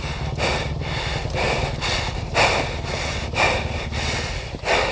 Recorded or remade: recorded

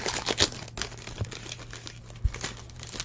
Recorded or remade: recorded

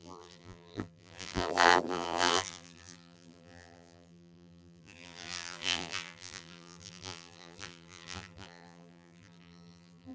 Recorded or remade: remade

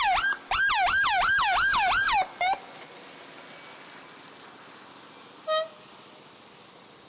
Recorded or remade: recorded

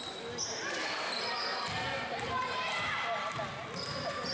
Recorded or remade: recorded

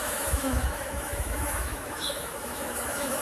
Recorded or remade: remade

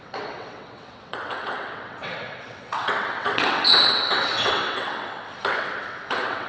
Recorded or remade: remade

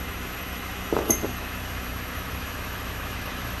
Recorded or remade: remade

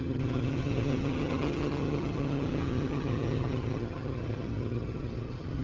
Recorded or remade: remade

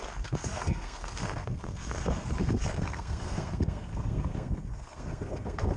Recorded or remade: remade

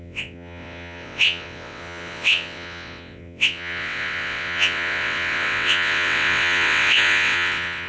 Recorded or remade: remade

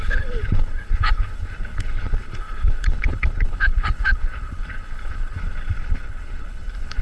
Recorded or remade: remade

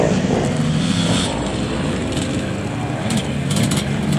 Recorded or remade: recorded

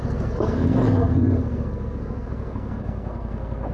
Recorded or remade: remade